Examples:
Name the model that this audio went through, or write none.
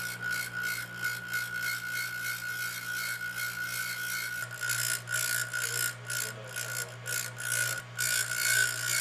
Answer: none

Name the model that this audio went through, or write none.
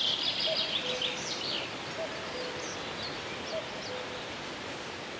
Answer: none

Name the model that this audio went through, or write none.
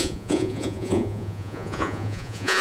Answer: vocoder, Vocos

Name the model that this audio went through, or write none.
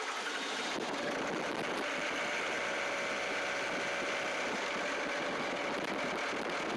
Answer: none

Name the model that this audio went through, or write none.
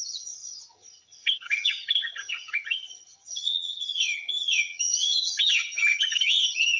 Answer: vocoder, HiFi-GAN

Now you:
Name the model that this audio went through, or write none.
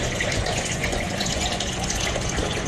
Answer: vocoder, Vocos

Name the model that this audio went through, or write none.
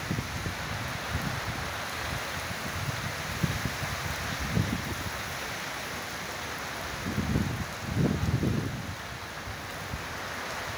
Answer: none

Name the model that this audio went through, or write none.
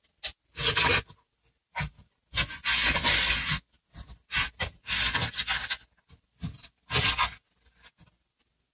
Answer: none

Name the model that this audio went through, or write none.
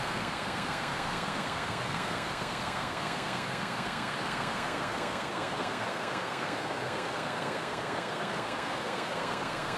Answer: codec, SNAC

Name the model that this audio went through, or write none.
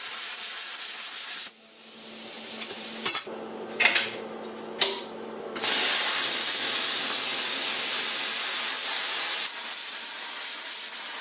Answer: none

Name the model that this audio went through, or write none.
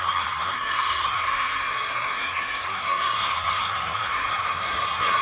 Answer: codec, SNAC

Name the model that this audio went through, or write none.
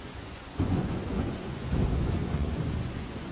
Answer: vocoder, Vocos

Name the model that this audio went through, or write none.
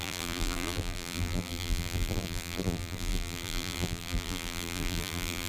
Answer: vocoder, BigVGAN v2